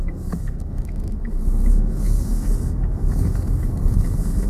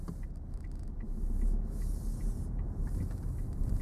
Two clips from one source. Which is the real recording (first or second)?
second